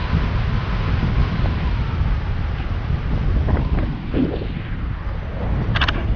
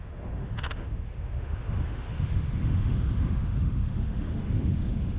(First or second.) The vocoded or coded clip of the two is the second